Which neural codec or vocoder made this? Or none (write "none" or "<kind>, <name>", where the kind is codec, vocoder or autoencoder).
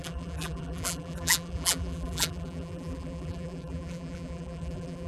vocoder, BigVGAN v2